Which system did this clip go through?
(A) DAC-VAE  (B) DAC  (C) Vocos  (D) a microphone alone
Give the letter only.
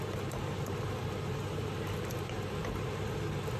D